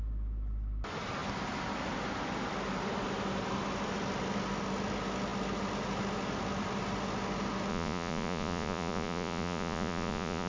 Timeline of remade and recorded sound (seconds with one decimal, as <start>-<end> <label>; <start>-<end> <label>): 0.0-7.7 recorded; 7.7-10.5 remade